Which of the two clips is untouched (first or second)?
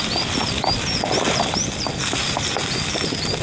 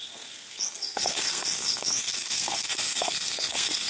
first